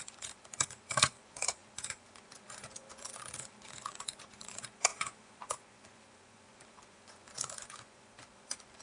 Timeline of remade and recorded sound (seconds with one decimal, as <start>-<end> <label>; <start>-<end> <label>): 0.0-8.8 remade